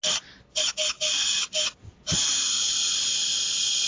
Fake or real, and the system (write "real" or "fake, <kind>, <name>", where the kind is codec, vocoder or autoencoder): real